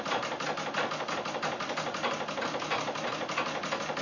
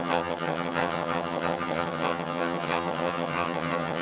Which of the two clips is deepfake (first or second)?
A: second